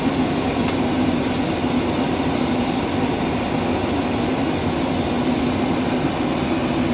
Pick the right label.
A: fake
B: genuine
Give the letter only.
B